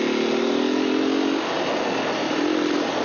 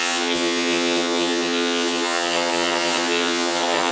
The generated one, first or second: second